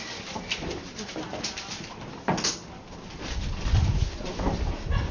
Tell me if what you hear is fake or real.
real